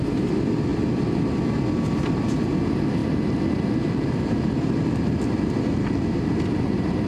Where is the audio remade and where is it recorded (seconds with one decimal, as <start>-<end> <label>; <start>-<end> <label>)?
0.0-7.1 recorded